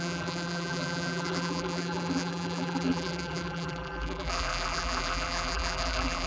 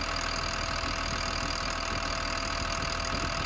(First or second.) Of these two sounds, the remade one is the first